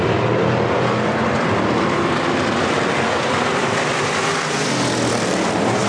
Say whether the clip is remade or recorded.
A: remade